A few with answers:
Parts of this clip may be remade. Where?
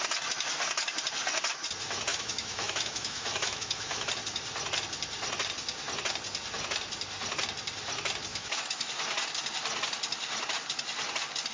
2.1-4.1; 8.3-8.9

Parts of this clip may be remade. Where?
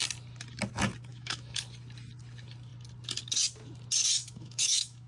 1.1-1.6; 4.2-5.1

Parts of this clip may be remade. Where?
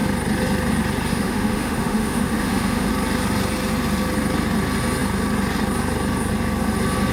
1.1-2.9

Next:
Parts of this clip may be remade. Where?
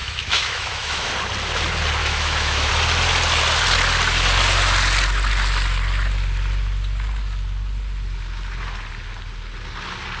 0.0-1.1; 2.0-2.7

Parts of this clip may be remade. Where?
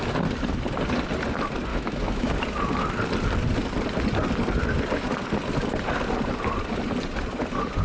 1.7-2.3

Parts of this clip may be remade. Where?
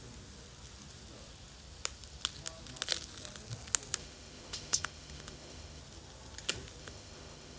4.0-5.8; 6.8-7.6